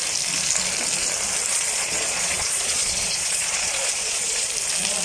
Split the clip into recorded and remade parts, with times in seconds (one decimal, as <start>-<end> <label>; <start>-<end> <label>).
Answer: 0.0-1.5 recorded; 1.5-4.5 remade; 4.5-5.0 recorded